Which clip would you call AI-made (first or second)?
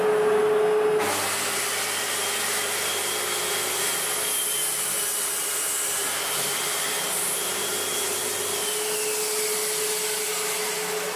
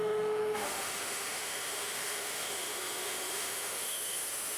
second